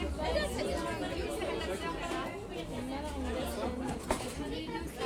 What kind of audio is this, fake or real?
real